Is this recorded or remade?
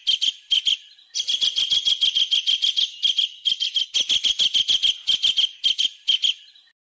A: recorded